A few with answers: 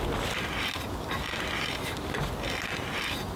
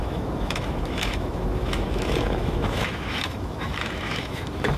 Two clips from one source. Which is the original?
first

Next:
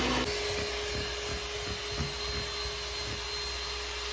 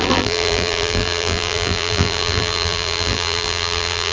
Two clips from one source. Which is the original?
first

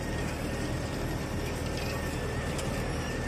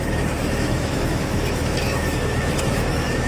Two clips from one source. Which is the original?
first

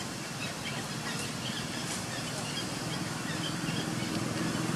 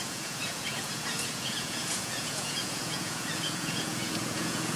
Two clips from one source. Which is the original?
first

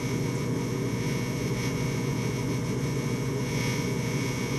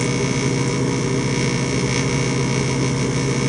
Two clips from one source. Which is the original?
second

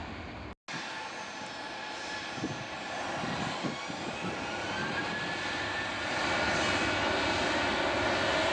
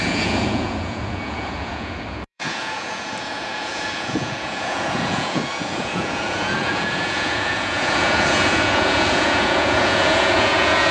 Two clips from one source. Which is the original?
first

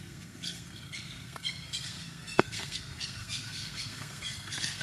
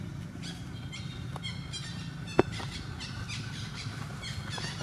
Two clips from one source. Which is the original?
second